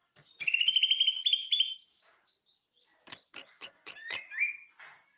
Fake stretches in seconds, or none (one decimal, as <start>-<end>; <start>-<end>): 1.4-2.3; 3.4-4.5